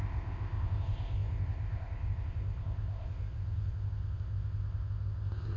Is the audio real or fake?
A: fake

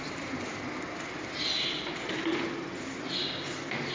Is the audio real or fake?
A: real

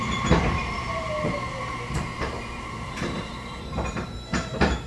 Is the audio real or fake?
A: fake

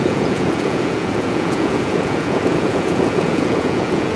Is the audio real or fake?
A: fake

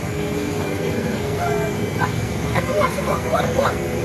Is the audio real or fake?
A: fake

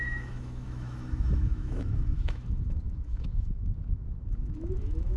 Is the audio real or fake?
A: fake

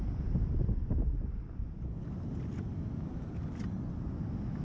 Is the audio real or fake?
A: real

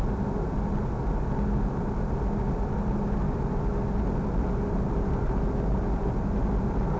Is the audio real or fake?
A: real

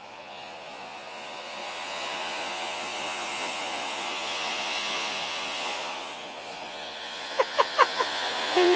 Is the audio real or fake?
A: fake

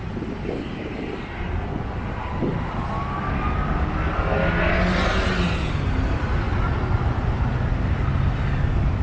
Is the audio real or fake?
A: real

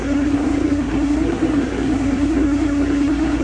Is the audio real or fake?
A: fake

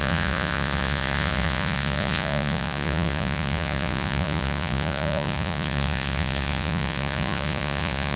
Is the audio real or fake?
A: fake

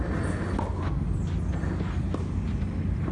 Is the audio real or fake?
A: real